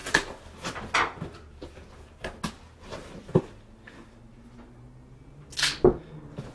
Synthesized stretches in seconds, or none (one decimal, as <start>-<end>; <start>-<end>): none